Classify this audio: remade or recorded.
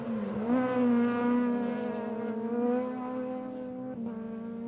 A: recorded